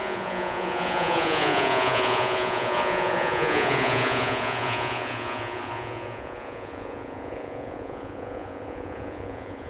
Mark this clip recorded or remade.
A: remade